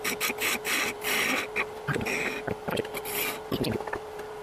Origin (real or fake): real